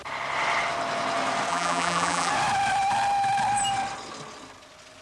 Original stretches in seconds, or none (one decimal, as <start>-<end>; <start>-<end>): 0.0-1.5; 2.3-5.0

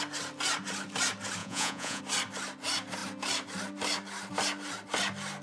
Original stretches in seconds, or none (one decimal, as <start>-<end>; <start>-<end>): 0.0-1.4; 2.0-5.4

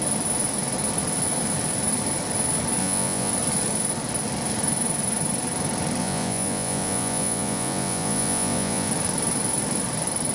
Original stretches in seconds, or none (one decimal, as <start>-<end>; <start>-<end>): 0.0-2.8; 3.3-6.0; 8.9-10.3